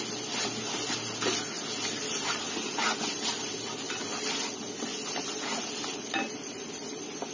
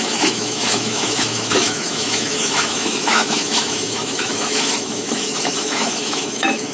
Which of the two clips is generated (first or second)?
second